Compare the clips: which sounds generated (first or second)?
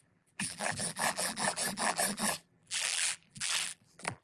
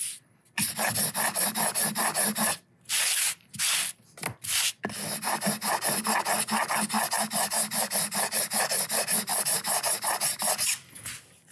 first